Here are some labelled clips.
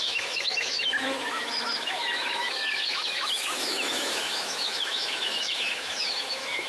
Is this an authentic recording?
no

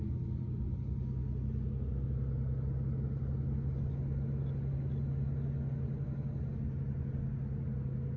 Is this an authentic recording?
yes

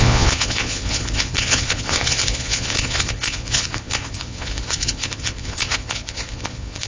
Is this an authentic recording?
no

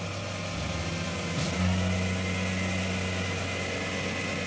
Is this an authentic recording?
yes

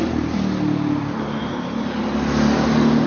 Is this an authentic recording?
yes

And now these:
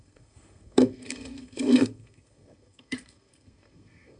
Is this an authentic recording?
no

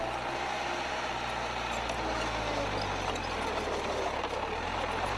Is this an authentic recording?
yes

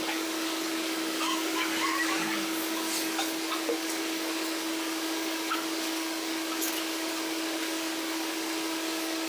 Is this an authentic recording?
no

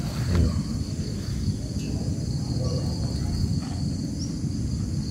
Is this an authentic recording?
yes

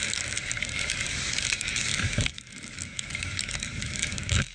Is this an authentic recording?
no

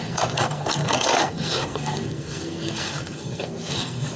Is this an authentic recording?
no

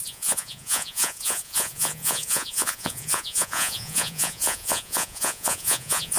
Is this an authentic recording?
no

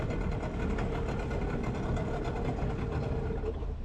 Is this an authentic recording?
yes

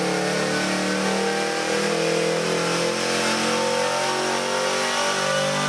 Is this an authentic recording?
yes